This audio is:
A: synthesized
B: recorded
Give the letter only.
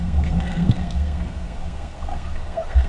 A